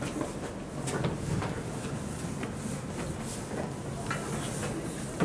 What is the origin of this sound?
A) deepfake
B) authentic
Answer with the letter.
B